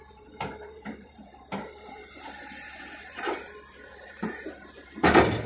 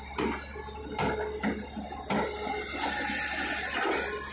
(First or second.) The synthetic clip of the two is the first